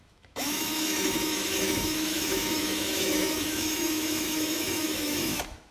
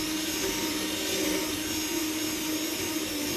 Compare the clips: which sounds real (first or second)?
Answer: second